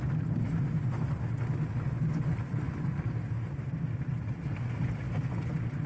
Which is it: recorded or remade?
recorded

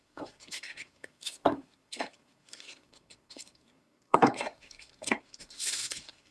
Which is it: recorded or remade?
remade